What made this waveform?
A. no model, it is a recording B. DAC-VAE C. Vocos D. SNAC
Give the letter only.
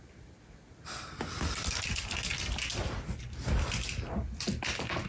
A